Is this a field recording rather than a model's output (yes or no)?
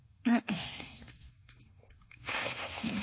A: no